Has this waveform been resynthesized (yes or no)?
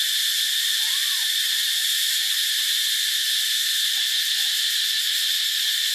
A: yes